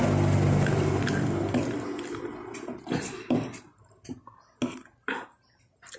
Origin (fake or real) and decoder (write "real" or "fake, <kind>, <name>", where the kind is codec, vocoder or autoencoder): real